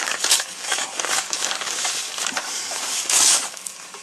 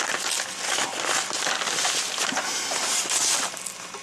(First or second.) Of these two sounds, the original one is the second